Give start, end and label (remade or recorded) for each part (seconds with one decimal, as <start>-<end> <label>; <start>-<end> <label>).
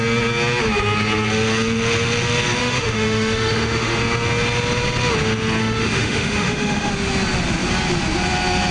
0.0-2.6 recorded; 2.6-4.0 remade; 4.0-5.6 recorded; 5.6-6.9 remade; 6.9-8.7 recorded